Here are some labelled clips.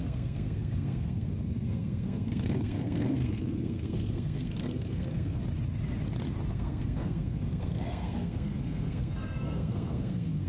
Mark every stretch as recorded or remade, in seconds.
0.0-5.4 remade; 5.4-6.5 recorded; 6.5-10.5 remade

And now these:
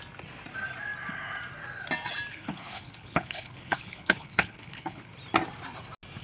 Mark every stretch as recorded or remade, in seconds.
0.0-2.3 recorded; 2.3-5.1 remade; 5.1-6.2 recorded

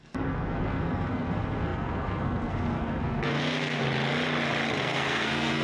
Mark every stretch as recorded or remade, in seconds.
0.0-3.8 remade; 3.8-4.8 recorded; 4.8-5.6 remade

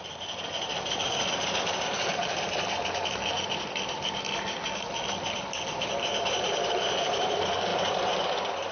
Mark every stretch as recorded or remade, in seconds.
0.0-3.2 remade; 3.2-5.7 recorded; 5.7-8.7 remade

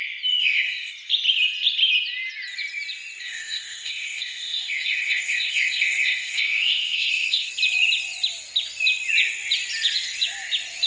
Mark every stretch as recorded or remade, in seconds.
0.0-0.4 recorded; 0.4-0.9 remade; 0.9-3.2 recorded; 3.2-7.5 remade; 7.5-10.9 recorded